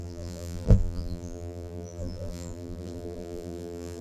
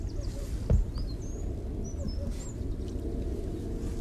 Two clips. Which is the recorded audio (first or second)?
second